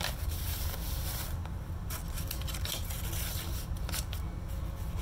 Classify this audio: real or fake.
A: real